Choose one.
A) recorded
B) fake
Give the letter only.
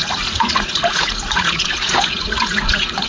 B